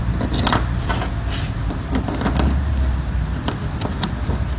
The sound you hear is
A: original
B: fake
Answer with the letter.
A